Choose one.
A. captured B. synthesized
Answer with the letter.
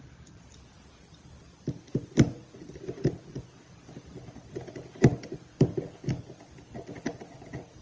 A